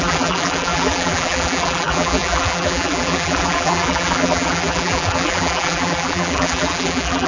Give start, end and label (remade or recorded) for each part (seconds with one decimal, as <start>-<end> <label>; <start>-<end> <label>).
0.0-7.3 remade